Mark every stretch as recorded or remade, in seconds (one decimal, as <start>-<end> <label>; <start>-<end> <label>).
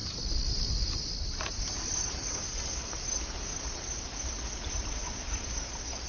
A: 0.0-2.3 recorded; 2.3-2.9 remade; 2.9-6.1 recorded